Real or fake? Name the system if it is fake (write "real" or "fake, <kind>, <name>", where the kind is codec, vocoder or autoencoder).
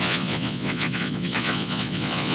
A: fake, vocoder, Vocos